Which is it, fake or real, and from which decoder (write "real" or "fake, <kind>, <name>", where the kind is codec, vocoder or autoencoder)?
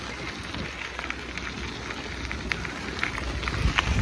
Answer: real